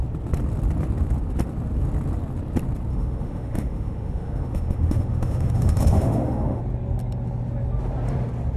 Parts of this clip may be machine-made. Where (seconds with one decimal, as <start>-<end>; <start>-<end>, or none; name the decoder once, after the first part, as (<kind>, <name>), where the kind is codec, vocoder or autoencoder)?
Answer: 2.9-6.6 (autoencoder, DAC-VAE)